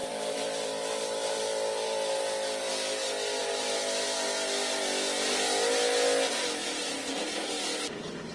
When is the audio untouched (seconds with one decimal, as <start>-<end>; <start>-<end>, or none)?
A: 2.2-8.3